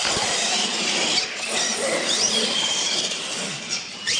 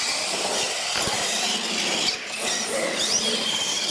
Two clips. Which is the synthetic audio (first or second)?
first